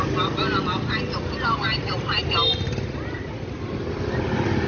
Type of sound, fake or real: real